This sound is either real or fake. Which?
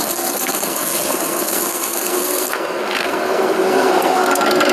fake